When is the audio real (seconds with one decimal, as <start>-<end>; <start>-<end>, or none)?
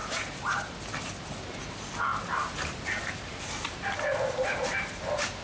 0.8-2.1